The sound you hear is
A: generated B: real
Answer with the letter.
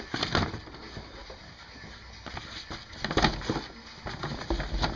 B